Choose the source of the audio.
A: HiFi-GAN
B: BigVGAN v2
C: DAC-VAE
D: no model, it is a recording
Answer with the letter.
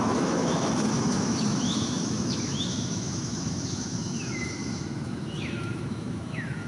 C